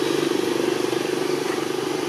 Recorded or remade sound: recorded